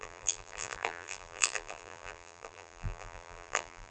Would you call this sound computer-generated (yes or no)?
yes